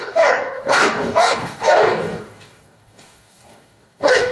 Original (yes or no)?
no